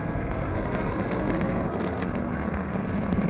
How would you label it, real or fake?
fake